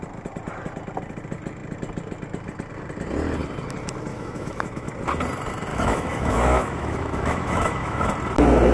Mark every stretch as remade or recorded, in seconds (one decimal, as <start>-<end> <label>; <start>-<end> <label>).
0.0-4.1 recorded; 4.1-4.9 remade; 4.9-5.7 recorded; 5.7-8.1 remade; 8.1-8.7 recorded

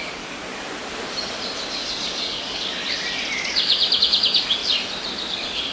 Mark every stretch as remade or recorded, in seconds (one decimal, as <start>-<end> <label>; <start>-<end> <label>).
0.0-0.4 remade; 0.4-1.7 recorded; 1.7-2.8 remade; 2.8-3.5 recorded; 3.5-4.6 remade; 4.6-5.3 recorded; 5.3-5.7 remade